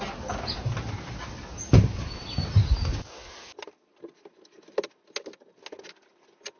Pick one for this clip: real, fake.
real